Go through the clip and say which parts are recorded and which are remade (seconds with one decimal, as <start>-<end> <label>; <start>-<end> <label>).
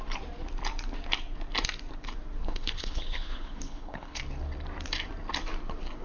0.0-2.4 recorded; 2.4-4.2 remade; 4.2-6.0 recorded